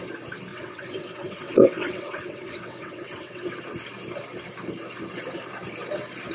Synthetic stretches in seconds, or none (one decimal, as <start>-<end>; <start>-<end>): 0.5-3.5